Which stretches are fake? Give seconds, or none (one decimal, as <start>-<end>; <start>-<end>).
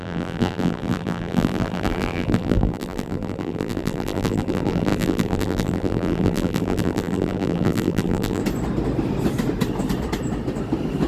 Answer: 0.0-8.4